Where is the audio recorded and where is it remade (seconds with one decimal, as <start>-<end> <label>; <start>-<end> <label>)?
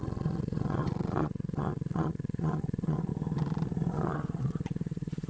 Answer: 0.0-3.1 remade; 3.1-3.9 recorded; 3.9-5.3 remade